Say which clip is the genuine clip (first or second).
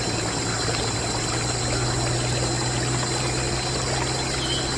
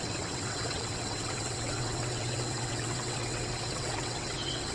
first